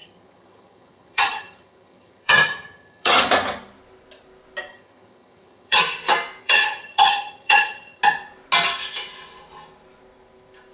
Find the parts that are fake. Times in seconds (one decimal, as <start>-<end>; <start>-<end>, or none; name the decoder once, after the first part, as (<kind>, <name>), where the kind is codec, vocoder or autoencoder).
0.0-3.2 (vocoder, HiFi-GAN); 4.7-5.8; 6.4-8.0